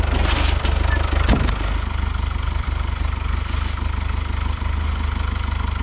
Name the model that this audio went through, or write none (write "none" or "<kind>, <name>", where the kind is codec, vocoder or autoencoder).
none